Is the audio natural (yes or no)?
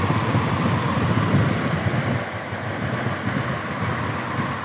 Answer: yes